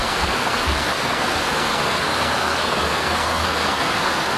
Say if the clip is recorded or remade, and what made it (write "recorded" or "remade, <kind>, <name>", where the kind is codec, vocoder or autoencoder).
remade, codec, SNAC